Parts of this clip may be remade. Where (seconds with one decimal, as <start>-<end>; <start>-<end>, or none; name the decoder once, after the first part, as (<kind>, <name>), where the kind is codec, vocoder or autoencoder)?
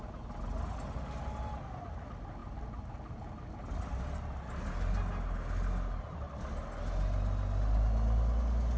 none